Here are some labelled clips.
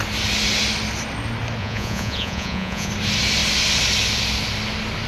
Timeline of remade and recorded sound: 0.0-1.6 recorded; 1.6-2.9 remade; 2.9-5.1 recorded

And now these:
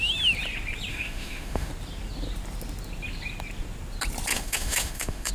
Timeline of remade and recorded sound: 0.0-0.9 recorded; 0.9-1.7 remade; 1.7-4.3 recorded; 4.3-5.3 remade

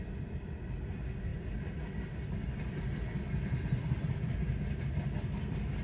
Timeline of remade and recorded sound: 0.0-5.8 recorded